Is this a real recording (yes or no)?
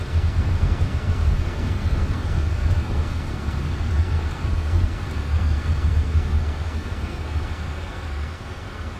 no